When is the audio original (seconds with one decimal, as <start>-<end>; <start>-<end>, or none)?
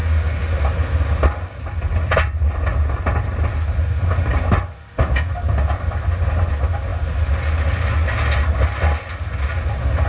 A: 0.0-10.1